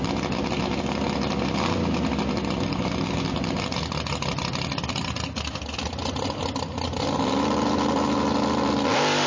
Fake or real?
real